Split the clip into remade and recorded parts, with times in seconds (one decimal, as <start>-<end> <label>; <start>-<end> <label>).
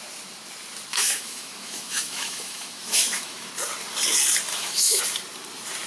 0.0-0.9 recorded; 0.9-3.5 remade; 3.5-4.5 recorded; 4.5-5.0 remade; 5.0-5.9 recorded